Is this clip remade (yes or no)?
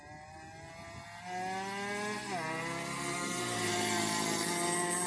no